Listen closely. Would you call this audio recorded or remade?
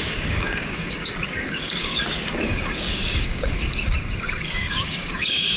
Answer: remade